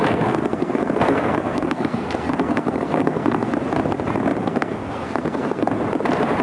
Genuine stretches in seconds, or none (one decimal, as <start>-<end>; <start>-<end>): 3.5-4.3; 5.7-6.4